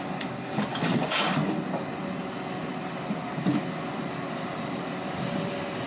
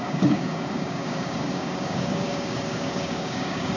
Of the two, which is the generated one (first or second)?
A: second